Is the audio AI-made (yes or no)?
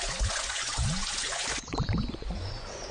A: yes